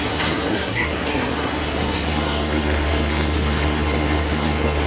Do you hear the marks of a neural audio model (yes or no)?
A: yes